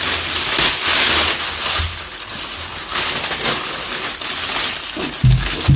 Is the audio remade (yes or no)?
no